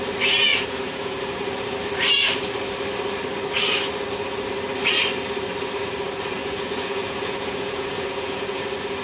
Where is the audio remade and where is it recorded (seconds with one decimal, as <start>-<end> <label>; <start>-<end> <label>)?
0.0-0.5 recorded; 0.5-1.2 remade; 1.2-6.4 recorded; 6.4-8.6 remade; 8.6-9.0 recorded